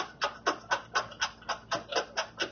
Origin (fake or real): real